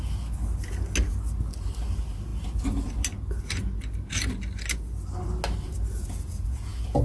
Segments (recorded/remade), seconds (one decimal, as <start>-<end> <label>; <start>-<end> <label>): 0.0-6.0 recorded; 6.0-7.0 remade